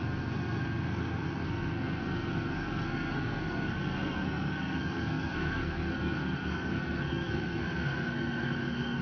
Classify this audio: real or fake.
fake